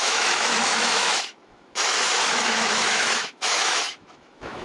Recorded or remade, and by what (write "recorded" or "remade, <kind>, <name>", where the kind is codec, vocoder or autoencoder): remade, autoencoder, DAC-VAE